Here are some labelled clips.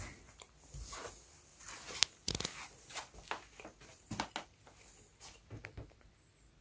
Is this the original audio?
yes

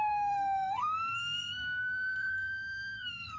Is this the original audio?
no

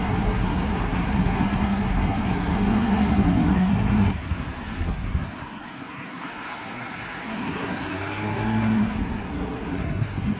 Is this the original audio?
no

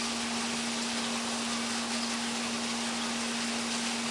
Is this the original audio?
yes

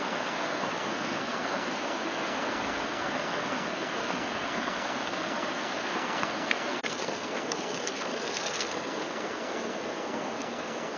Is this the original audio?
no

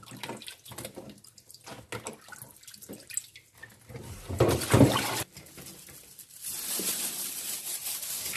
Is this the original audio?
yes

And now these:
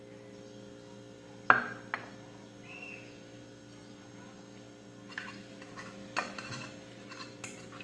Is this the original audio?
yes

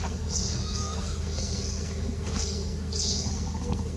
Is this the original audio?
no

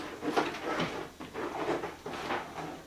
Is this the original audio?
yes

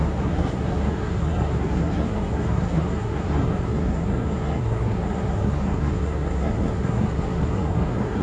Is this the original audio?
no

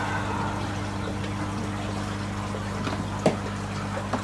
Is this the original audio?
yes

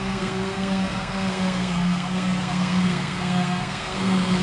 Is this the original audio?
no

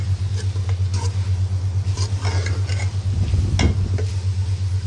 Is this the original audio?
yes